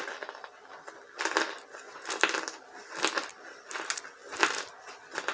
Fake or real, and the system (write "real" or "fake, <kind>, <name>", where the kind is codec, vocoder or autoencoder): real